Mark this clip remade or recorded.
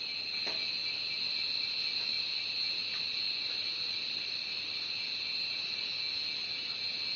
recorded